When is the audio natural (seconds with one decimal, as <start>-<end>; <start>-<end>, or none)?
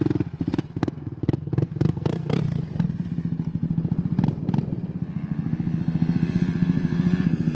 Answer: 0.0-0.6; 2.4-7.5